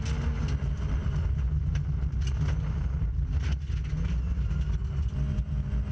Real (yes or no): yes